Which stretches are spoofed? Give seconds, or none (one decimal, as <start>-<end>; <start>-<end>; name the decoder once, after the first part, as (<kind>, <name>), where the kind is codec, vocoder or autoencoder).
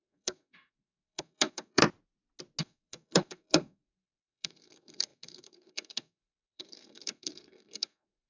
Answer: 0.0-1.8 (codec, SNAC); 2.6-8.3